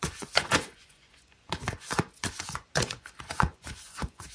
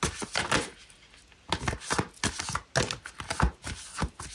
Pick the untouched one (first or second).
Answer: second